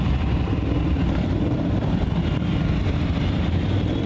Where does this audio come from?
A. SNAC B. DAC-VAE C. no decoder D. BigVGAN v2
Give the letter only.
D